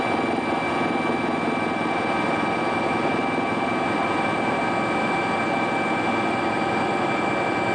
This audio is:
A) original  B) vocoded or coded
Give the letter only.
A